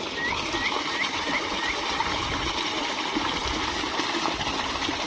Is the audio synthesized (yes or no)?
no